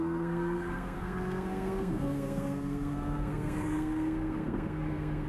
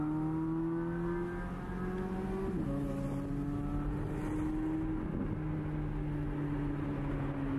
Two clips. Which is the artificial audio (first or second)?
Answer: first